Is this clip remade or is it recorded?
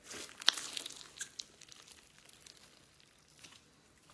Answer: recorded